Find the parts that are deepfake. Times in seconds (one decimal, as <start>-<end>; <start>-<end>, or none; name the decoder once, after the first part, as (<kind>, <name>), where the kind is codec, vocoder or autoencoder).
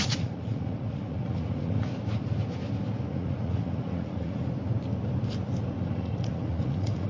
0.0-1.9 (vocoder, Vocos); 3.1-4.4; 5.8-7.1